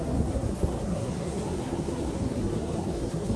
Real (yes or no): no